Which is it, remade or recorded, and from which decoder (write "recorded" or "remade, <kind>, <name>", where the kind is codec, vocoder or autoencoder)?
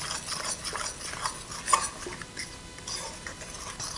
recorded